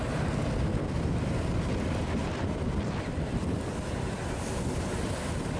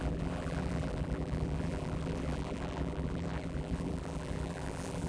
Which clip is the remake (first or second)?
second